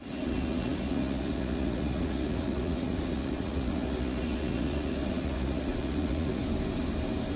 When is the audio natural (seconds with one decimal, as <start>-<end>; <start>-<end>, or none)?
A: 6.4-7.4